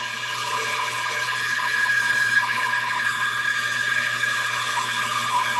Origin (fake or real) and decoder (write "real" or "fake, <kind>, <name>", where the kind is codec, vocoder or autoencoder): fake, codec, HILCodec